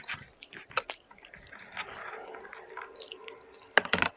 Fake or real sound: real